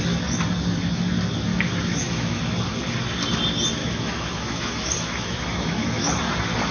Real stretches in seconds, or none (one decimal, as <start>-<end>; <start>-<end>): 0.0-1.5; 2.4-3.8; 6.1-6.7

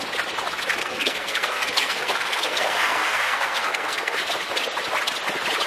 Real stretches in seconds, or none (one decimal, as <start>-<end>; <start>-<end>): 0.0-0.8; 4.2-5.7

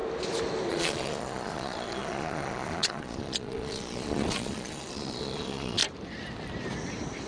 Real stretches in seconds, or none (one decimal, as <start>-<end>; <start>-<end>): 0.0-0.7; 5.8-7.3

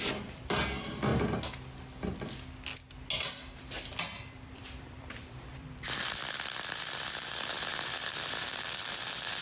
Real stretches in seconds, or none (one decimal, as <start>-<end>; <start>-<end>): 1.1-4.0